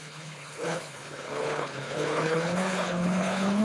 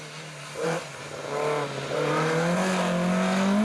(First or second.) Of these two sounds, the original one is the second